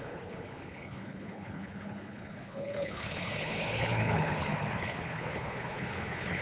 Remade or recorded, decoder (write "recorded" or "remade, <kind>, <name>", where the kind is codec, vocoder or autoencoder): remade, codec, HILCodec